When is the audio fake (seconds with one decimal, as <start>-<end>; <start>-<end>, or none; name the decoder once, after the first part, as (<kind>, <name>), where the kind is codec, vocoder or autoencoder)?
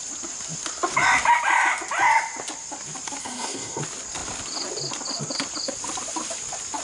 3.2-3.8 (codec, SNAC)